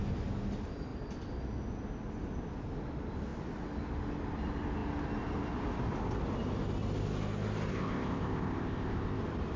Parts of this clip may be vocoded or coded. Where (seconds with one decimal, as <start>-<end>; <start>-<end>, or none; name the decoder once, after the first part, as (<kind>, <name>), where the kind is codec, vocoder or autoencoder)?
7.7-9.2 (codec, ZipCodec)

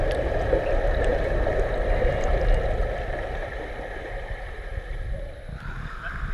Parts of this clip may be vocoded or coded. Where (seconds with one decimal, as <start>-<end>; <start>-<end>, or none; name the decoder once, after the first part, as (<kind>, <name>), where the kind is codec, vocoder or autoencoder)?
0.0-6.3 (vocoder, BigVGAN v2)

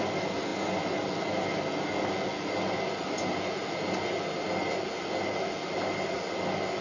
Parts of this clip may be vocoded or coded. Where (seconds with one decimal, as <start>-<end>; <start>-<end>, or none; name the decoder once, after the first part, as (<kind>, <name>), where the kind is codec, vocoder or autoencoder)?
none

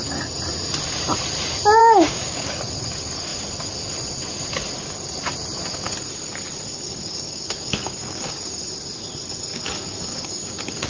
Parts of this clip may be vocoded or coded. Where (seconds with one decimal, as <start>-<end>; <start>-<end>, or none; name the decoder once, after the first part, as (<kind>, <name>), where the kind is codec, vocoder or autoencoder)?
1.8-2.6 (codec, DAC); 6.7-8.4; 9.5-10.9